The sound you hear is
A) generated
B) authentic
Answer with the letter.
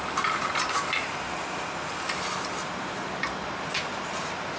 B